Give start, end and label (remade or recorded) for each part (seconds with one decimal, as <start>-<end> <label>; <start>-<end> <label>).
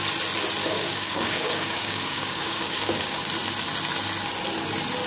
0.0-0.6 recorded; 0.6-3.2 remade; 3.2-5.1 recorded